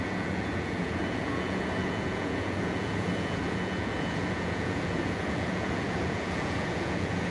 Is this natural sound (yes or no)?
no